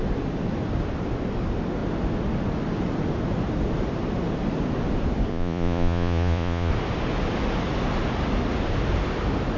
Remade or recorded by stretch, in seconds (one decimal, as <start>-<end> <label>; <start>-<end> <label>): 0.0-5.3 recorded; 5.3-6.7 remade; 6.7-9.6 recorded